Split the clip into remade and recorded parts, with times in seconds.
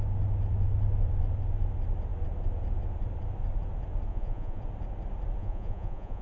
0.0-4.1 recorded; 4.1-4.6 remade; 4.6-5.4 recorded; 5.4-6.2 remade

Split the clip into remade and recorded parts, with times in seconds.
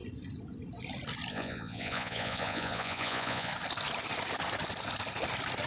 0.0-1.3 recorded; 1.3-3.5 remade; 3.5-5.7 recorded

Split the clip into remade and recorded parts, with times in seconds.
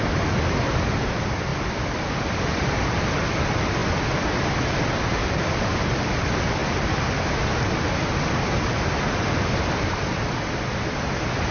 0.0-11.5 recorded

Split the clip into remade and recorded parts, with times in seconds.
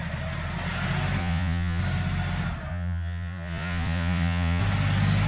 0.0-1.2 recorded; 1.2-1.8 remade; 1.8-2.7 recorded; 2.7-4.6 remade; 4.6-5.3 recorded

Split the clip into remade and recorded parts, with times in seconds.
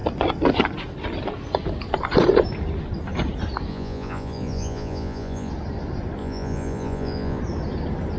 0.0-3.7 recorded; 3.7-5.5 remade; 5.5-6.2 recorded; 6.2-7.4 remade; 7.4-8.2 recorded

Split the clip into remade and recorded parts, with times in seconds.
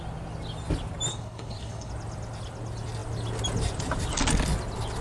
0.0-1.1 recorded; 1.1-1.9 remade; 1.9-5.0 recorded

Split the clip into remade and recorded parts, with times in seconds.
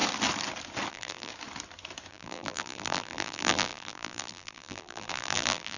0.0-0.9 recorded; 0.9-1.3 remade; 1.3-2.1 recorded; 2.1-5.8 remade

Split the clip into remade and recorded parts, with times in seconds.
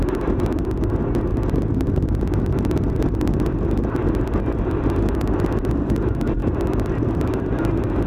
0.0-8.1 recorded